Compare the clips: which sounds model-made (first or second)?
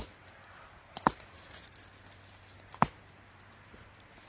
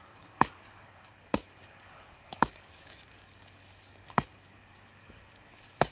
second